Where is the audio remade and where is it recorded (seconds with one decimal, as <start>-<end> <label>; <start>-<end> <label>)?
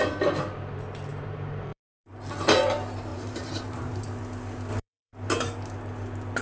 0.0-1.1 recorded; 1.1-2.1 remade; 2.1-3.1 recorded; 3.1-4.2 remade; 4.2-4.7 recorded; 4.7-5.3 remade; 5.3-6.4 recorded